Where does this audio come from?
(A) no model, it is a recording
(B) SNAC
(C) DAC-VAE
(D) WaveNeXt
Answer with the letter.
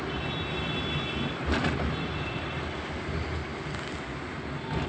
A